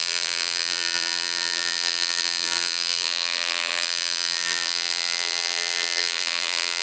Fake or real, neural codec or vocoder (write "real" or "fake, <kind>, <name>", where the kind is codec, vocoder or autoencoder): fake, vocoder, BigVGAN v2